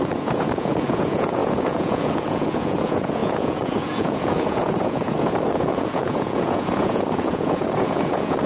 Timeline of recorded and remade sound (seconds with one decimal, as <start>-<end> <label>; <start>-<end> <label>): 0.0-8.5 remade